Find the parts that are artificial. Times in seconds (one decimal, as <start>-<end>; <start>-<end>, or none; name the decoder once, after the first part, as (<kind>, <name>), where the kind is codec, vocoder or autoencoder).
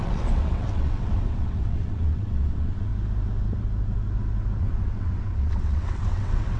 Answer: 0.0-2.9 (vocoder, WaveNeXt); 4.6-6.6